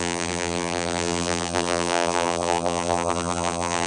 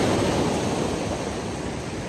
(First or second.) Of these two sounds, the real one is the second